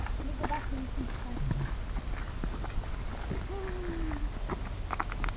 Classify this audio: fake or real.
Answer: real